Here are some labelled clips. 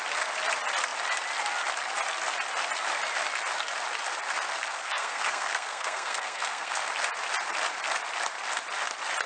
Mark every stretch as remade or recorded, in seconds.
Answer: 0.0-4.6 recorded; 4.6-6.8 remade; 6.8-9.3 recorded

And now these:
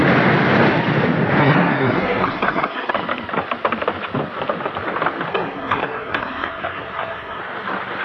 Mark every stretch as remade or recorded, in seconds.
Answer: 0.0-1.4 recorded; 1.4-2.9 remade; 2.9-5.3 recorded; 5.3-7.4 remade; 7.4-8.0 recorded

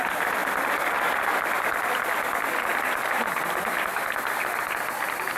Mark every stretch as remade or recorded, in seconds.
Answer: 0.0-5.4 recorded

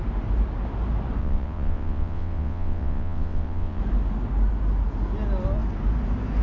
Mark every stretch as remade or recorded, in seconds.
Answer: 0.0-1.2 recorded; 1.2-3.8 remade; 3.8-6.4 recorded